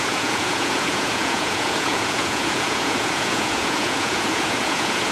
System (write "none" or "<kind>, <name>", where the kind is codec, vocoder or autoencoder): vocoder, Vocos